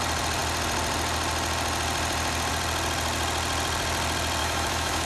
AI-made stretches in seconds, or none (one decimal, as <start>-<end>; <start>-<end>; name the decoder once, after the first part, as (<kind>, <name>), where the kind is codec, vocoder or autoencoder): 4.4-5.1 (autoencoder, DAC-VAE)